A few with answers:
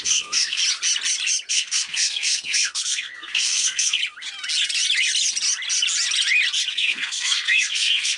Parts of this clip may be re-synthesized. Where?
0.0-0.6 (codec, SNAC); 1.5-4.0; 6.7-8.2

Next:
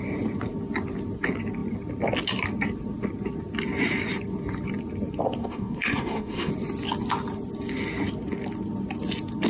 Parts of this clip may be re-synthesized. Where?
5.4-6.5 (autoencoder, DAC-VAE)

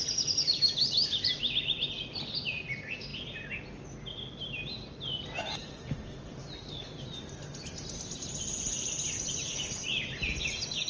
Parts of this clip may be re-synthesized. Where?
none

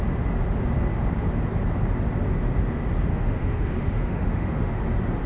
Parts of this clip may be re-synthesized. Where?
3.1-4.8 (autoencoder, DAC-VAE)

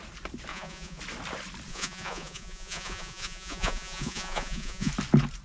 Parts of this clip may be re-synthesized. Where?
0.5-1.0 (vocoder, Vocos); 1.7-4.9